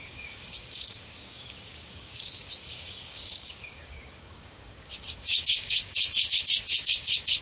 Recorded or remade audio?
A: remade